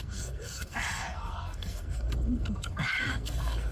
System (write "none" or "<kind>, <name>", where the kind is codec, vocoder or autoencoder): codec, SNAC